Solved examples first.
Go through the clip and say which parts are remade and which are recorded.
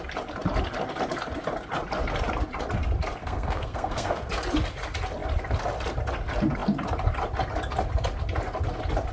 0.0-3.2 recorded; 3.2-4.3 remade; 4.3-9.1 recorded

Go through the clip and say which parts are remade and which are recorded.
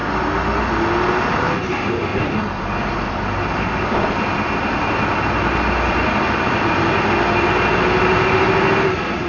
0.0-2.1 recorded; 2.1-6.7 remade; 6.7-9.3 recorded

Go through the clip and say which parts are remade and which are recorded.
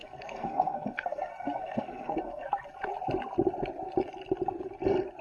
0.0-2.5 remade; 2.5-5.2 recorded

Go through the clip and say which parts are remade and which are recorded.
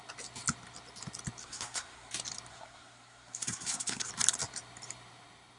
0.0-1.4 recorded; 1.4-2.1 remade; 2.1-2.5 recorded; 2.5-4.1 remade; 4.1-5.6 recorded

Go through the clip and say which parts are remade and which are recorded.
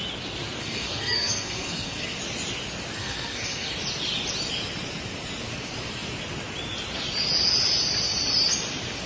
0.0-0.6 recorded; 0.6-2.2 remade; 2.2-3.0 recorded; 3.0-3.7 remade; 3.7-9.1 recorded